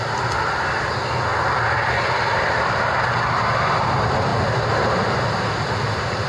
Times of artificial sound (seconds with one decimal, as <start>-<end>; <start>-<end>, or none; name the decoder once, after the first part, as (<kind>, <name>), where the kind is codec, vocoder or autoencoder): none